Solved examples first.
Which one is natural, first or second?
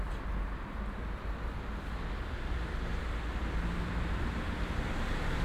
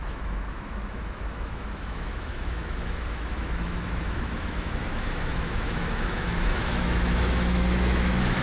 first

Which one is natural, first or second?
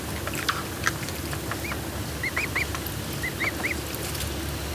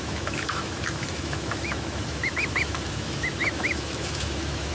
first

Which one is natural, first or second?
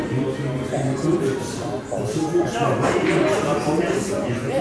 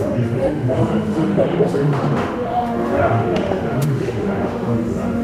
first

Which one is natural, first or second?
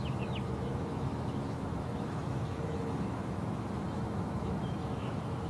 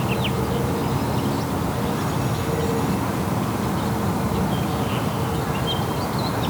second